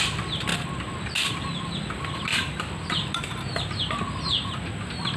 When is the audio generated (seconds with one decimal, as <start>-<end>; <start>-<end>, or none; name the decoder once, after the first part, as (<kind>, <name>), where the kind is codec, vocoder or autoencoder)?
none